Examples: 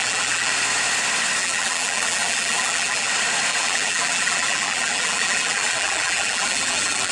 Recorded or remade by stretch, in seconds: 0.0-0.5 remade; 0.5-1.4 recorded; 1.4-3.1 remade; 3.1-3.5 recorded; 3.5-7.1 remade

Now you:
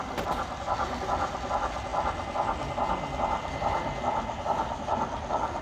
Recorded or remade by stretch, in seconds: 0.0-5.6 recorded

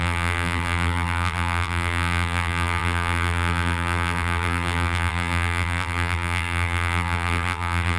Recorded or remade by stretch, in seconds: 0.0-8.0 remade